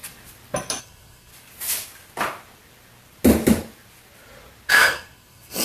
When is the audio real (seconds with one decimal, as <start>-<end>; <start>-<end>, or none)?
0.0-0.8; 1.3-4.7